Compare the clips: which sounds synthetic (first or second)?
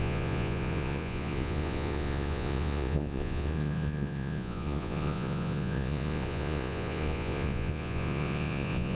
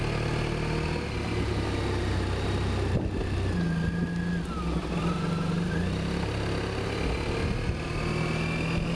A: first